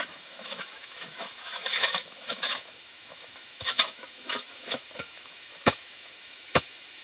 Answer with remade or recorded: remade